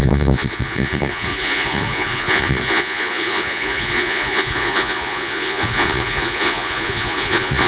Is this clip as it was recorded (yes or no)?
no